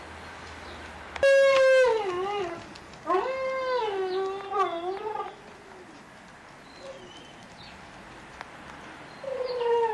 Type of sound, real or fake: real